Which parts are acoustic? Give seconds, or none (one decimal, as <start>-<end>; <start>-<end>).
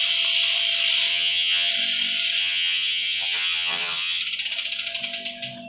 0.0-1.1; 1.7-2.4; 4.2-5.7